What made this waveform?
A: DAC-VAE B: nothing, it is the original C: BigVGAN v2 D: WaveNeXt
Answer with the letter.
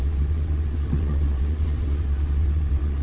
D